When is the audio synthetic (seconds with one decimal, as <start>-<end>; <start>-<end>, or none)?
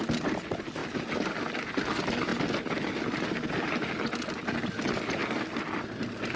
none